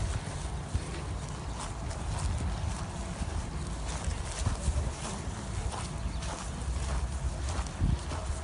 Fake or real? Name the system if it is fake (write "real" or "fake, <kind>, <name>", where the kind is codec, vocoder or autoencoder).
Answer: real